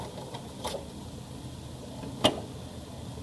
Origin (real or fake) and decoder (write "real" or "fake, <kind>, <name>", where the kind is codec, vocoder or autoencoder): real